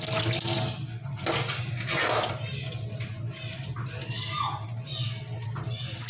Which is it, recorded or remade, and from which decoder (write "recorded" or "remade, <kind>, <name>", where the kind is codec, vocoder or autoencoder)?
recorded